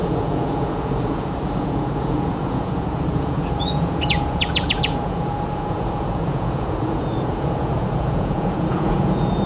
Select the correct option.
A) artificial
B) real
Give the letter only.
A